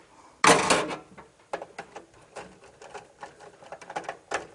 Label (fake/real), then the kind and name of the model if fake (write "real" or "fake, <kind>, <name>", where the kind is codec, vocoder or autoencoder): real